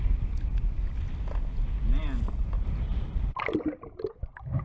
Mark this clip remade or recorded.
recorded